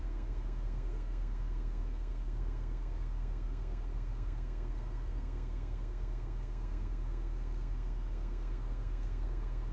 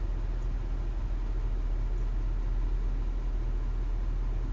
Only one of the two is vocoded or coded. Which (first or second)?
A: first